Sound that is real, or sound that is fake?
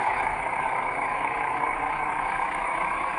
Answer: fake